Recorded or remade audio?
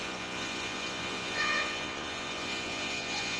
remade